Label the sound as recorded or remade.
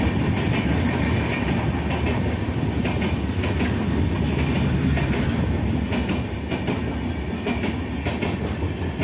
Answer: recorded